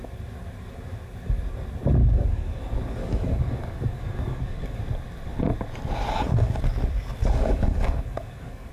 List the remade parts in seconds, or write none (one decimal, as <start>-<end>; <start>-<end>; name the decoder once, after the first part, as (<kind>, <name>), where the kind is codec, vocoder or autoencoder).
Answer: 2.0-2.6 (codec, DAC); 3.0-4.8; 7.2-8.7